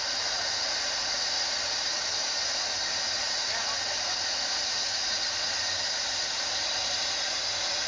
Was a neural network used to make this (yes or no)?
no